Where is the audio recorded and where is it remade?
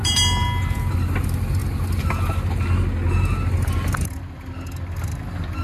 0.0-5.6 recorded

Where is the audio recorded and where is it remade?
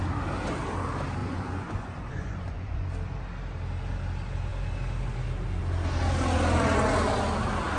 0.0-1.2 recorded; 1.2-2.9 remade; 2.9-7.8 recorded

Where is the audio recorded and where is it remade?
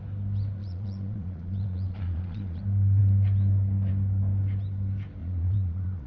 0.0-0.6 recorded; 0.6-2.6 remade; 2.6-5.2 recorded; 5.2-6.1 remade